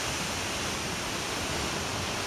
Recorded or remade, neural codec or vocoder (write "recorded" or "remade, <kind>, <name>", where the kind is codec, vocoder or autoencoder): recorded